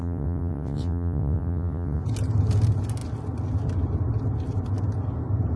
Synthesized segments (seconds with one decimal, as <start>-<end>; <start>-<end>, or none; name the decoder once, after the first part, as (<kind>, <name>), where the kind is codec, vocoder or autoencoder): 0.0-2.0 (vocoder, WaveNeXt)